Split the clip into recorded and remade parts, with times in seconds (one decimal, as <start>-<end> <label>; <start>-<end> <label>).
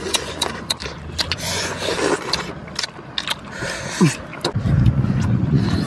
0.0-0.8 remade; 0.8-1.3 recorded; 1.3-1.9 remade; 1.9-4.9 recorded; 4.9-5.9 remade